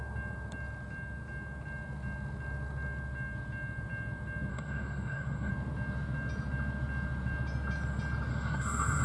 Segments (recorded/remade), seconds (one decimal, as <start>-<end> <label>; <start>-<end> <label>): 0.0-4.5 recorded; 4.5-5.5 remade; 5.5-8.3 recorded; 8.3-9.0 remade